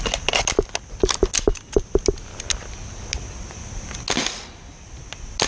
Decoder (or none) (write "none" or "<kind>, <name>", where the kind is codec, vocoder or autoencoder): none